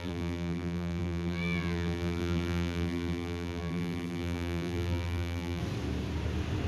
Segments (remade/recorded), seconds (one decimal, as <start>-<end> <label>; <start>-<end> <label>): 0.0-5.6 remade; 5.6-6.7 recorded